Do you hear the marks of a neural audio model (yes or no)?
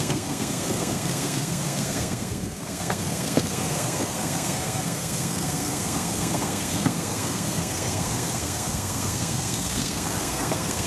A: yes